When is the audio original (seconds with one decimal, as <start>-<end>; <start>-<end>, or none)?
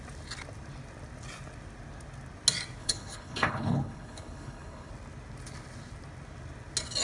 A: 0.0-2.8; 4.9-7.0